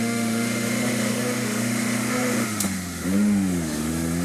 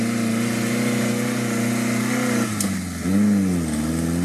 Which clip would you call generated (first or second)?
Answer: first